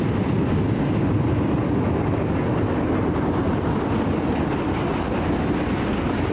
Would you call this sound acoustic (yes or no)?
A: yes